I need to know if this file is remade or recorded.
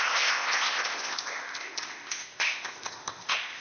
remade